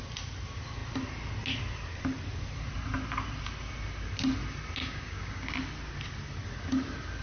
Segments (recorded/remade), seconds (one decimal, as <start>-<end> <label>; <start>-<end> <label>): 0.0-4.8 recorded; 4.8-5.5 remade; 5.5-7.2 recorded